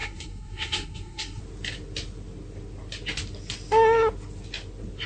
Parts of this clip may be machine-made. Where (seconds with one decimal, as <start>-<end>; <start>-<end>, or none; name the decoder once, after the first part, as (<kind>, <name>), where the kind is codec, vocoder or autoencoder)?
0.0-1.4 (codec, SNAC)